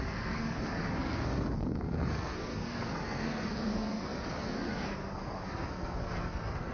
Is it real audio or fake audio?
fake